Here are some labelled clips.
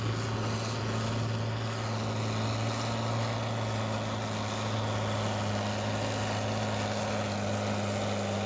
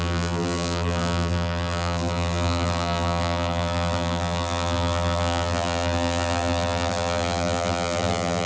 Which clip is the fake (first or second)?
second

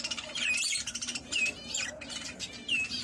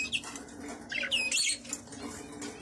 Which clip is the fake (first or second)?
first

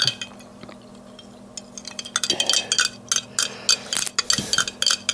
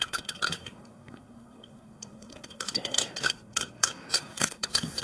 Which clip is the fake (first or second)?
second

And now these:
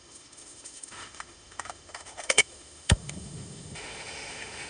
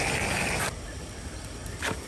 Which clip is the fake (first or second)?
first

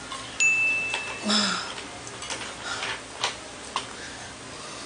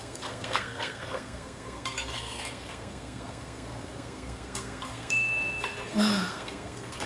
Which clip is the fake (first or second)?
second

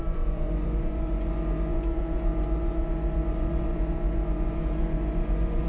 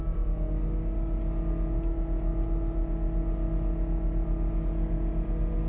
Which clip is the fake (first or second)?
first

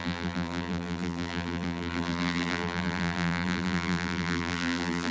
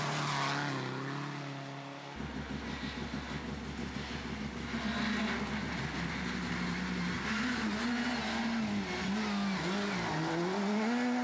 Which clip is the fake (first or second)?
first